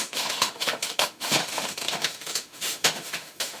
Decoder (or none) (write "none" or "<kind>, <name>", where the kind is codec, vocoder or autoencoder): autoencoder, DAC-VAE